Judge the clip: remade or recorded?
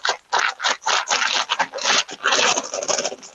recorded